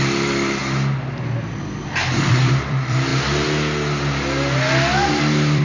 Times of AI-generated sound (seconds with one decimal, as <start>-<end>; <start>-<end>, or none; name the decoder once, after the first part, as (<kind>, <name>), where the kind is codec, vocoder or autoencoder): 0.0-0.6 (vocoder, BigVGAN v2); 1.5-3.1; 5.1-5.6